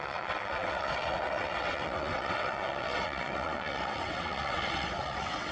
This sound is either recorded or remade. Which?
remade